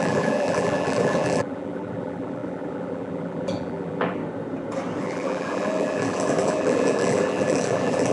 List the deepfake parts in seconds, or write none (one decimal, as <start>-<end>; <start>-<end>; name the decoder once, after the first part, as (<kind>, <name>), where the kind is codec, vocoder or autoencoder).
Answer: 0.0-4.2 (vocoder, BigVGAN v2); 5.0-8.1

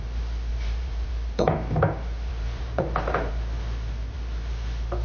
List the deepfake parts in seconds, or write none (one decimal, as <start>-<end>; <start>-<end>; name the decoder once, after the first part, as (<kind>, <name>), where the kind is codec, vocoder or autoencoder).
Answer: 0.5-1.1 (vocoder, BigVGAN v2); 2.3-3.3

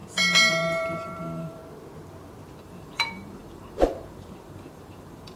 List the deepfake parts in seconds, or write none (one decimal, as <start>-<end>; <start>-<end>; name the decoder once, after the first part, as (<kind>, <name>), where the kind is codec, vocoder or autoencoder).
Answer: 0.5-1.6 (vocoder, BigVGAN v2); 2.5-5.4

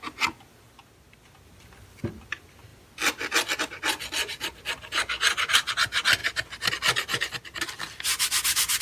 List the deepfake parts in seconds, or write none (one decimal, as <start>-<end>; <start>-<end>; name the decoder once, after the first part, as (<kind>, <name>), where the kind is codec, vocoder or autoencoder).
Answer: 6.2-6.7 (vocoder, BigVGAN v2)

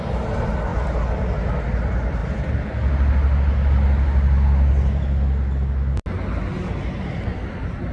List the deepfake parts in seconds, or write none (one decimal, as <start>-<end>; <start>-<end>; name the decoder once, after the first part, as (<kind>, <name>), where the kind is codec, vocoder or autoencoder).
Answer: 0.7-1.4 (vocoder, BigVGAN v2)

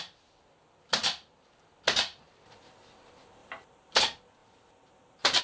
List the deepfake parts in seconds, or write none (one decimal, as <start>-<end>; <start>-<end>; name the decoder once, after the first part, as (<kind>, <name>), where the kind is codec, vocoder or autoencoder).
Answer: 3.4-4.0 (vocoder, BigVGAN v2); 4.4-5.4

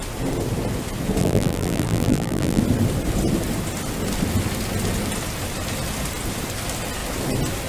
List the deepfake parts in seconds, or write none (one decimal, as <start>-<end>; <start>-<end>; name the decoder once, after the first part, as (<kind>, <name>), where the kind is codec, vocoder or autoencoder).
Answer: 1.2-2.6 (vocoder, BigVGAN v2)

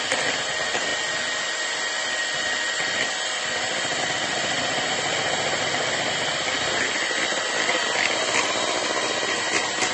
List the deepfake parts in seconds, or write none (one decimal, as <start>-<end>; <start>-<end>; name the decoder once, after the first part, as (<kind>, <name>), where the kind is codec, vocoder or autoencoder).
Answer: 0.0-9.9 (vocoder, BigVGAN v2)